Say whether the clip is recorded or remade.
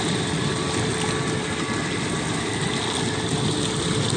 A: recorded